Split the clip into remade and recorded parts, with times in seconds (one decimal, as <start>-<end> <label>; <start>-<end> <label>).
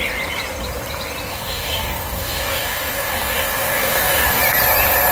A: 0.0-1.3 recorded; 1.3-4.4 remade; 4.4-5.1 recorded